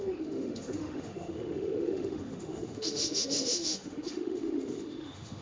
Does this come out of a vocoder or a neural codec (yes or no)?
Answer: yes